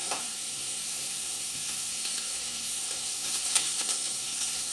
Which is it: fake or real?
fake